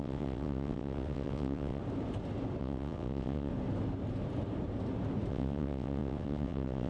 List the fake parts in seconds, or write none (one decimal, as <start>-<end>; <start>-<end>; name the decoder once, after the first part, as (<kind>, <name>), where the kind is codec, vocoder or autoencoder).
0.0-1.8 (vocoder, WaveNeXt); 2.6-3.5; 5.3-6.9